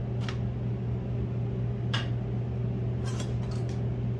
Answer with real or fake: real